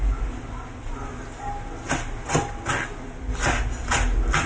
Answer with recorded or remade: recorded